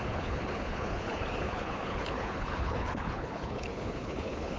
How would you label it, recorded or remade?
remade